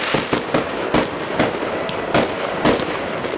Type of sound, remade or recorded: recorded